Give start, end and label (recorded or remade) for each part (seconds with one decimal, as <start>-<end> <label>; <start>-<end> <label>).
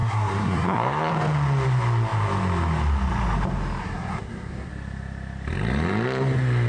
0.0-1.1 remade; 1.1-3.8 recorded; 3.8-4.7 remade; 4.7-6.7 recorded